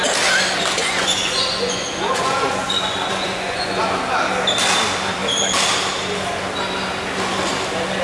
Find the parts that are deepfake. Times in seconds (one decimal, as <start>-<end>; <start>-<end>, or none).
0.8-3.8